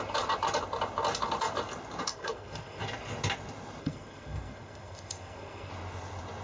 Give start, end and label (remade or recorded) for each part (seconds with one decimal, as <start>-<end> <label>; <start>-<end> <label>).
0.0-2.1 recorded; 2.1-2.8 remade; 2.8-3.8 recorded; 3.8-5.7 remade; 5.7-6.4 recorded